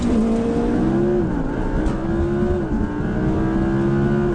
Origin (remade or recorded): recorded